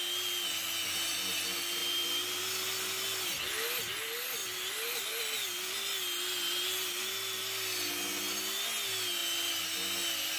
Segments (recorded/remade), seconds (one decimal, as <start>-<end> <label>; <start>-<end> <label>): 0.0-1.8 recorded; 1.8-2.4 remade; 2.4-10.4 recorded